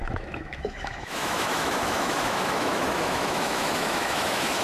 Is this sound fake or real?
fake